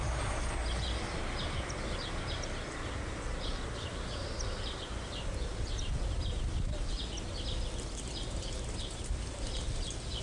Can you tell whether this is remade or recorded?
recorded